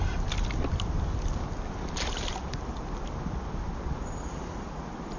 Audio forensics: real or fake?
real